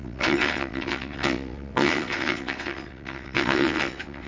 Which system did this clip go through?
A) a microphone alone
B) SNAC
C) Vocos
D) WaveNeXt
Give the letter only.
D